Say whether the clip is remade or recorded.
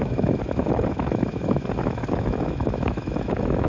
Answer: remade